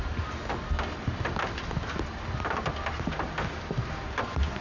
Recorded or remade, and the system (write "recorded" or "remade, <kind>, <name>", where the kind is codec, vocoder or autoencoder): recorded